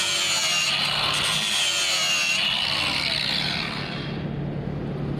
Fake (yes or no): no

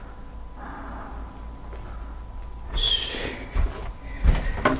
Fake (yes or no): no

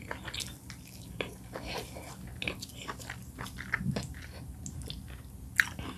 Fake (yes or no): no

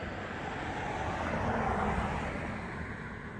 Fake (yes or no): no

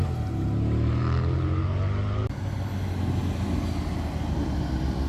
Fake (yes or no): no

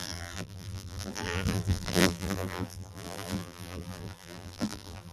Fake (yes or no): yes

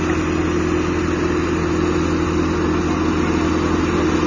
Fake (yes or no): no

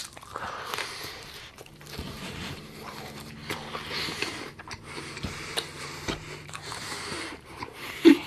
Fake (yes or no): yes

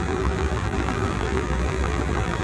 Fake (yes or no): yes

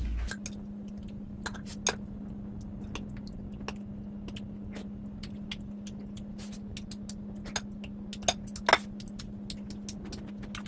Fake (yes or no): no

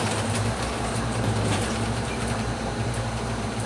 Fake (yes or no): yes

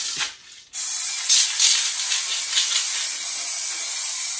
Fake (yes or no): no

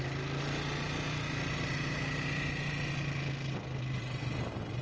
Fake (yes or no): no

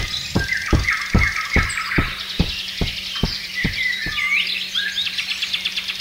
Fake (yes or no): yes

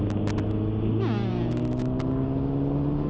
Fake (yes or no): no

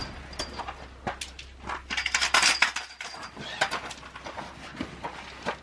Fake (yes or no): no